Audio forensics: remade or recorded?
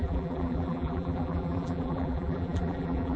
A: remade